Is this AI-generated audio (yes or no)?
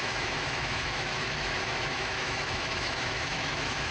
yes